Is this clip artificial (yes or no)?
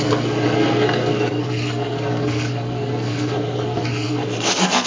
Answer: yes